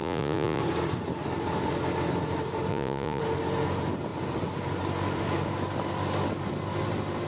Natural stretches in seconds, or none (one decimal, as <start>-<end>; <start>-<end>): 0.6-2.7; 3.2-7.3